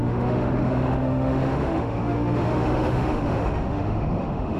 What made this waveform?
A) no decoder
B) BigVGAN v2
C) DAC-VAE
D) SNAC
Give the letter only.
C